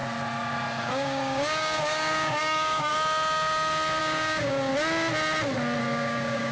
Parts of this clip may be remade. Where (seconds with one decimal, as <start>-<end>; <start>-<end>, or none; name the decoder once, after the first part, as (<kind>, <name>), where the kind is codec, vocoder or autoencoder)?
0.8-2.9 (codec, DAC); 4.0-4.7; 5.8-6.5